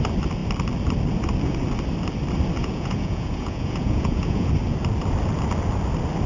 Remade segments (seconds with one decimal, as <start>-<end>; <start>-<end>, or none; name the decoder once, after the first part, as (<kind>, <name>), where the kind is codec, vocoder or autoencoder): 2.6-4.5 (vocoder, Vocos)